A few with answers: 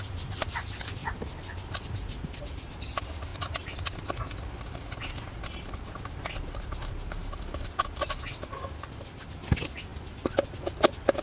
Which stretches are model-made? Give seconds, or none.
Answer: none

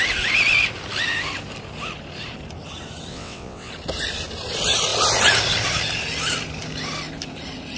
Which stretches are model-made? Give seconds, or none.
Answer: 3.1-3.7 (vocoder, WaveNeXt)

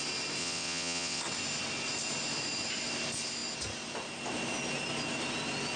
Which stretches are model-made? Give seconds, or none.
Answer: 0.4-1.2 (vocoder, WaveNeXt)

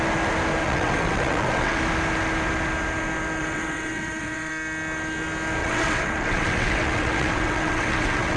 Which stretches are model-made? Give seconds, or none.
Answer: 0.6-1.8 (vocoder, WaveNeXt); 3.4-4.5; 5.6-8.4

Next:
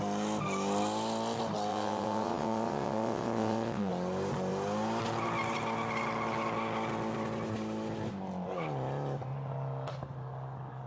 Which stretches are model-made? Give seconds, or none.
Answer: 1.7-3.9 (vocoder, WaveNeXt)

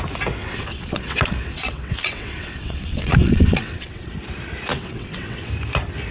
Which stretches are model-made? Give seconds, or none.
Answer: 0.4-4.1 (vocoder, WaveNeXt); 4.7-5.5

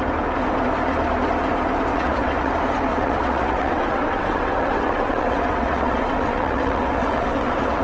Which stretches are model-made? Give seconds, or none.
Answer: 1.9-2.5 (vocoder, WaveNeXt); 2.9-7.8